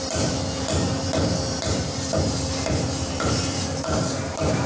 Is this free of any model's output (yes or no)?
no